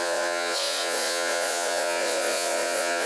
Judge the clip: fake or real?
fake